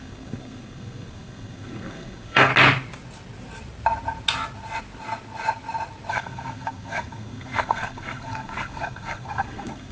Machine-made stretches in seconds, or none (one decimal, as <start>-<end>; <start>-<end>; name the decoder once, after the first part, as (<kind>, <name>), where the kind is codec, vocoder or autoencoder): 0.0-2.5 (codec, SNAC); 6.1-9.9